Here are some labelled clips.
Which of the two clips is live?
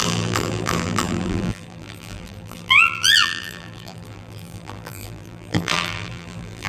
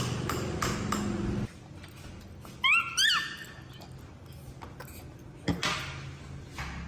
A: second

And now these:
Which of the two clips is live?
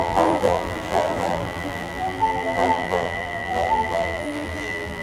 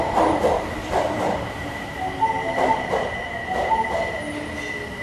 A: second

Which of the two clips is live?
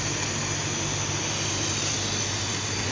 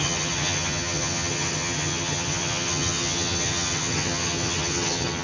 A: first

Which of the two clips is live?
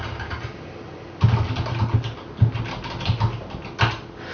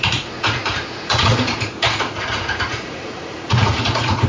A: first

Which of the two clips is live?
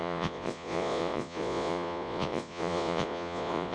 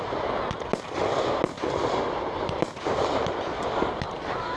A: second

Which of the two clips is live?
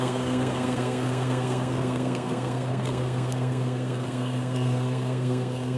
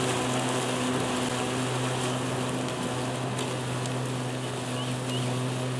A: second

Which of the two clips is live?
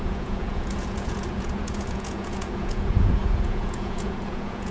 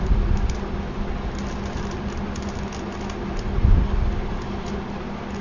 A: second